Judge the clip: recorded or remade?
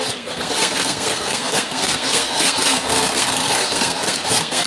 remade